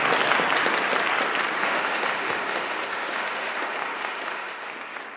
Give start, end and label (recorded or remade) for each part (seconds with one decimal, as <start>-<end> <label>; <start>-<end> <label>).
0.0-1.6 recorded; 1.6-4.7 remade; 4.7-5.2 recorded